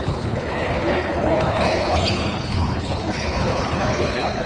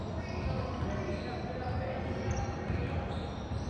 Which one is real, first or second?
second